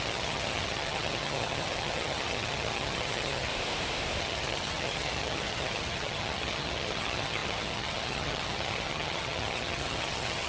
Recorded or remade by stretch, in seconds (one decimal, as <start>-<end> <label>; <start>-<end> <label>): 0.0-3.5 remade; 3.5-4.2 recorded; 4.2-10.5 remade